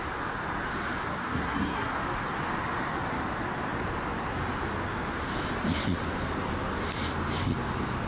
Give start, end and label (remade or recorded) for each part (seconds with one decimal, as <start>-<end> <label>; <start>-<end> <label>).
0.0-1.1 recorded; 1.1-2.0 remade; 2.0-8.1 recorded